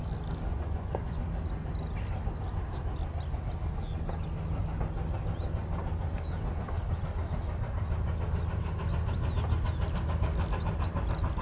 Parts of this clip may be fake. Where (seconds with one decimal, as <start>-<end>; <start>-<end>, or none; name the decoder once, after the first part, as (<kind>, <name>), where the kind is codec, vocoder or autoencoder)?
0.5-1.2 (vocoder, Vocos)